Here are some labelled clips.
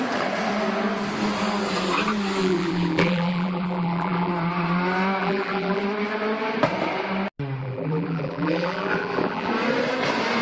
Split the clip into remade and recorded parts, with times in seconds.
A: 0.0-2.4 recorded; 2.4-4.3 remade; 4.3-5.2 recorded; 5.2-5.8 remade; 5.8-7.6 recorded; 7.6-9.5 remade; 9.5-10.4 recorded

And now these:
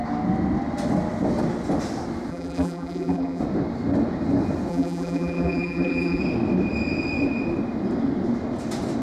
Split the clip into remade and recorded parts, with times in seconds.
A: 0.0-2.3 recorded; 2.3-3.4 remade; 3.4-4.7 recorded; 4.7-6.2 remade; 6.2-9.0 recorded

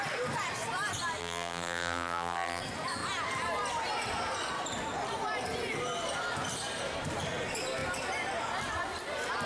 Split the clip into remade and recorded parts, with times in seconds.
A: 0.0-1.2 recorded; 1.2-2.6 remade; 2.6-9.5 recorded